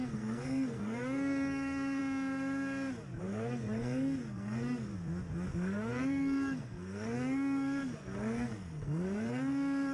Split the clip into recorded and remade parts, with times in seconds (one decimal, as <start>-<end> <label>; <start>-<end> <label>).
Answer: 0.0-2.0 remade; 2.0-3.2 recorded; 3.2-4.9 remade; 4.9-5.5 recorded; 5.5-9.9 remade